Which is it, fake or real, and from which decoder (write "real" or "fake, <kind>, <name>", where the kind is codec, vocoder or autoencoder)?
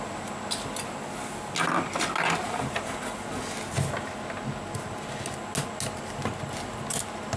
real